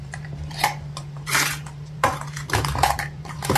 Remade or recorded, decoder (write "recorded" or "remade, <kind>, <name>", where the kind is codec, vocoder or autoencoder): remade, vocoder, BigVGAN v2